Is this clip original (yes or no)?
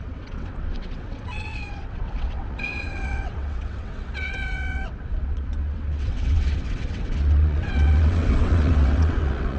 no